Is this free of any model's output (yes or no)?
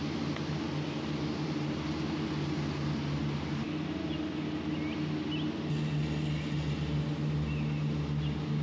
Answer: yes